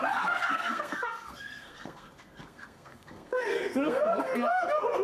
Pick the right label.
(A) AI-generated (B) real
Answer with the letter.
A